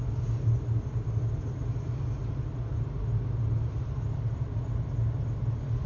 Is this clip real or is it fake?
real